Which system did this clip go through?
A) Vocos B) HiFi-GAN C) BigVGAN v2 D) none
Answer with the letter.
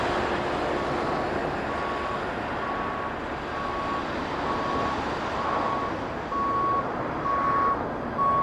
D